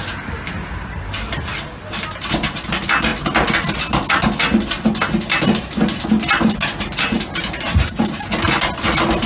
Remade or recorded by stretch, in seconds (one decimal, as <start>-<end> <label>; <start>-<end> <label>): 0.0-6.7 recorded; 6.7-8.2 remade; 8.2-9.3 recorded